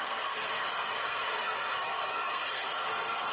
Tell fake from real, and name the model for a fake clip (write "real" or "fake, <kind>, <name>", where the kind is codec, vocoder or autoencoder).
fake, codec, SNAC